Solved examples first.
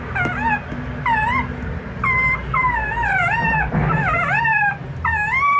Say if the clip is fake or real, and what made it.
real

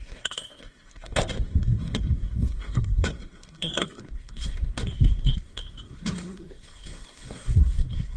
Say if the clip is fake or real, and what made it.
fake, codec, SNAC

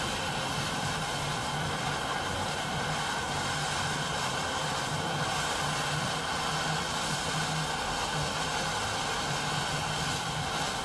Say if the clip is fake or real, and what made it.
real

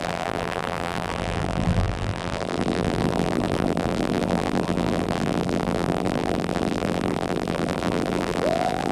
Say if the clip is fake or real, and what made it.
fake, vocoder, BigVGAN v2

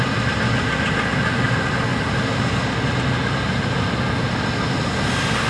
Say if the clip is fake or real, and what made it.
real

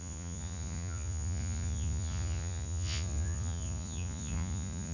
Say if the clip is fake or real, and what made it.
fake, vocoder, Vocos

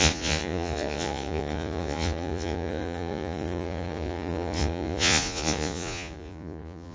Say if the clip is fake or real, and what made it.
fake, vocoder, Vocos